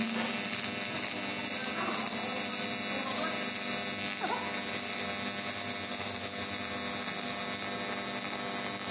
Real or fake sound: real